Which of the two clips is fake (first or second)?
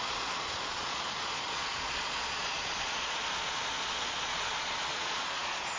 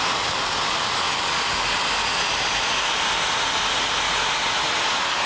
first